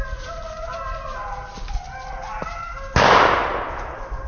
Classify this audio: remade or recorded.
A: recorded